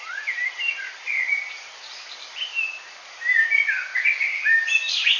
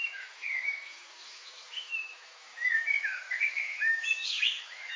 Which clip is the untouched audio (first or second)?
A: first